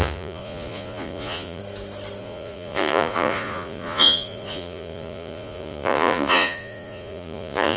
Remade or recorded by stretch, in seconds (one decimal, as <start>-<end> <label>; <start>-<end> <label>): 0.0-1.6 remade; 1.6-2.2 recorded; 2.2-7.8 remade